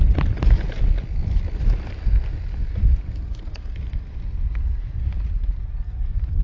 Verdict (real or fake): real